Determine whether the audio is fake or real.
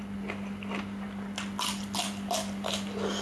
real